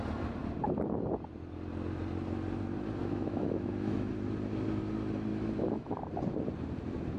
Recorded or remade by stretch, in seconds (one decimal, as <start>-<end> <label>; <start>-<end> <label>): 0.0-3.0 recorded; 3.0-4.1 remade; 4.1-5.3 recorded; 5.3-6.0 remade; 6.0-7.2 recorded